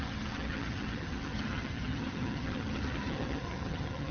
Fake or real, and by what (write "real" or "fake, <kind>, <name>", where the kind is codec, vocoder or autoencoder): fake, vocoder, HiFi-GAN